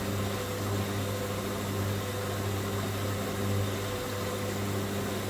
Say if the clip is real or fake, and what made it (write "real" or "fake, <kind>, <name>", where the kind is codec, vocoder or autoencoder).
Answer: real